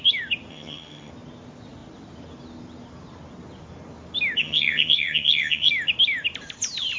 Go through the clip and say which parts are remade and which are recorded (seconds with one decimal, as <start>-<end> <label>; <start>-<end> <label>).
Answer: 0.0-0.5 recorded; 0.5-1.1 remade; 1.1-4.4 recorded; 4.4-5.7 remade; 5.7-7.0 recorded